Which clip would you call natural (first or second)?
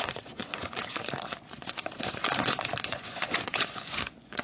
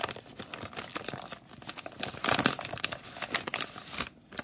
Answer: second